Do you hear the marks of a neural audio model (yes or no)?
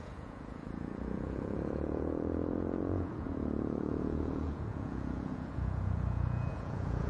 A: yes